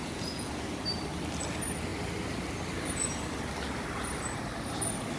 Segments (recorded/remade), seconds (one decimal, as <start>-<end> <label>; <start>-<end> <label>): 0.0-0.5 remade; 0.5-5.2 recorded